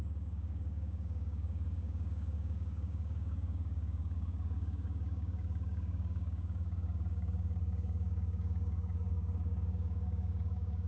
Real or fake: fake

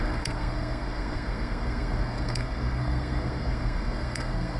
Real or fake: fake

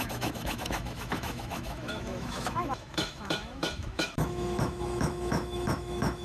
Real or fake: fake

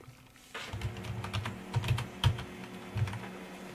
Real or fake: real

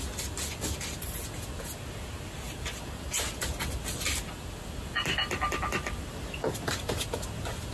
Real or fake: real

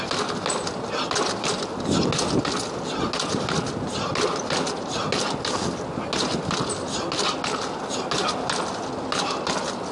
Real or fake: real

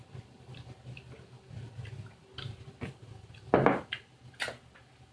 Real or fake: real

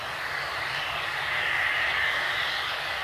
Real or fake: fake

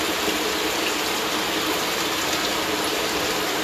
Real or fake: real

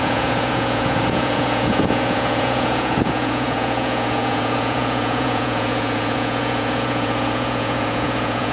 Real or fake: fake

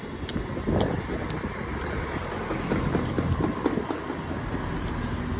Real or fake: real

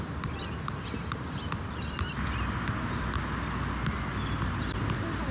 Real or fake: real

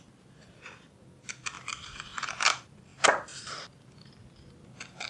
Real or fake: real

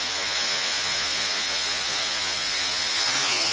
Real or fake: fake